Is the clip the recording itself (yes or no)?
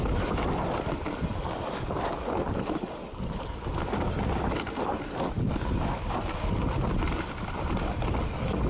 yes